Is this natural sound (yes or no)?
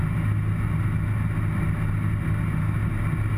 yes